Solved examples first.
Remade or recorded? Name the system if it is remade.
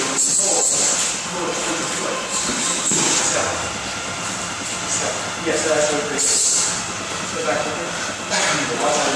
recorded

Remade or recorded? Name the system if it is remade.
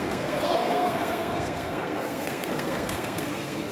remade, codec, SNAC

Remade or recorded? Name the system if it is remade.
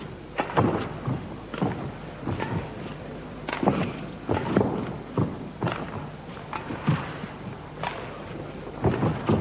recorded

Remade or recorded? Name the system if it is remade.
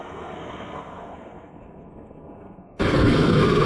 remade, codec, SNAC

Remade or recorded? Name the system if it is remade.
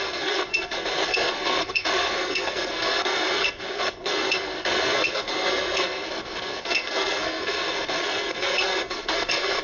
remade, codec, SNAC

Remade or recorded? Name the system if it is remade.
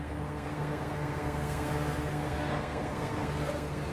remade, codec, SNAC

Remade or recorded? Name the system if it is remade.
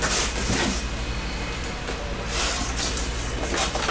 recorded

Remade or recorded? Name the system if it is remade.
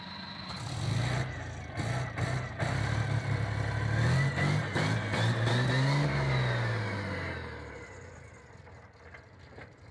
recorded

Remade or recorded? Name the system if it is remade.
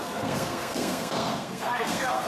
remade, codec, SNAC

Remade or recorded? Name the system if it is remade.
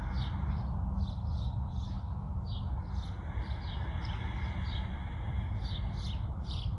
recorded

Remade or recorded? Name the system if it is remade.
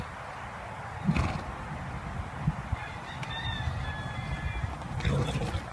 recorded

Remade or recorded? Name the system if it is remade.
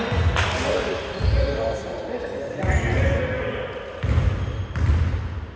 recorded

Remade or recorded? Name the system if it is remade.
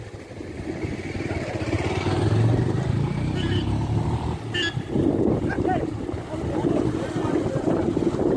recorded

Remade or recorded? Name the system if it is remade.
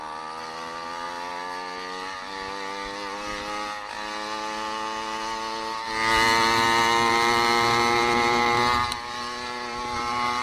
recorded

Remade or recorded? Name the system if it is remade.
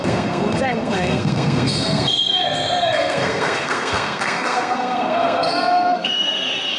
remade, codec, SNAC